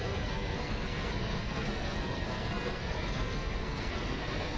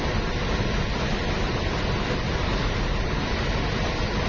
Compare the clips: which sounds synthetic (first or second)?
first